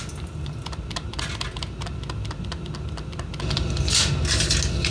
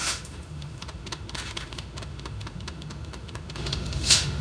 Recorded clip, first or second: first